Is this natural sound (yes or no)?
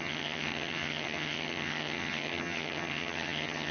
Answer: no